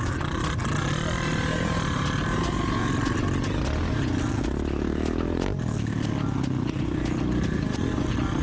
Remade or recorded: recorded